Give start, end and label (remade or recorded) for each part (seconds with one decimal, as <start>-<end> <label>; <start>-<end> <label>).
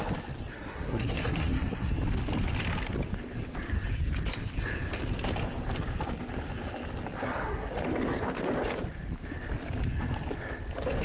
0.0-0.5 recorded; 0.5-1.9 remade; 1.9-7.2 recorded; 7.2-7.7 remade; 7.7-11.0 recorded